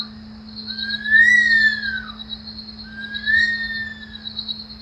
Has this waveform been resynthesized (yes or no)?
no